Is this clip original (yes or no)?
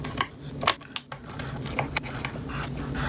yes